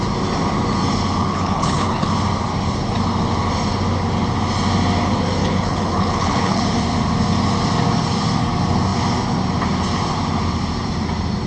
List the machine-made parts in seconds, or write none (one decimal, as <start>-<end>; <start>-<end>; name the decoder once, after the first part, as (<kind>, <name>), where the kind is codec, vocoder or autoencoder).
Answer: 1.2-2.1 (codec, HILCodec); 5.4-6.6